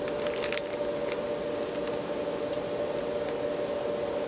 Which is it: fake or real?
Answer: real